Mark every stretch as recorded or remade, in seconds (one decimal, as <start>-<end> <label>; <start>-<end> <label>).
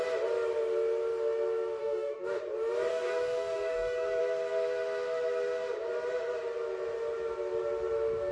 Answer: 0.0-1.8 recorded; 1.8-2.4 remade; 2.4-2.9 recorded; 2.9-4.2 remade; 4.2-8.3 recorded